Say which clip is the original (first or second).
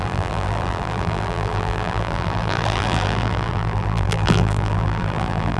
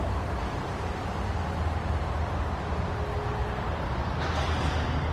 second